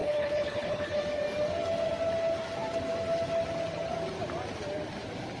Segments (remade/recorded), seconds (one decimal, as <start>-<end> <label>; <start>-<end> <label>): 0.0-1.0 remade; 1.0-5.4 recorded